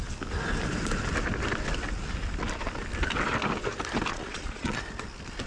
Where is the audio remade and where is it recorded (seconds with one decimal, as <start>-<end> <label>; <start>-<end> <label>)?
0.0-4.1 recorded; 4.1-4.8 remade; 4.8-5.5 recorded